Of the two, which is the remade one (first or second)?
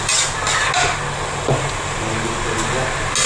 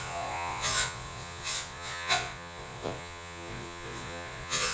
second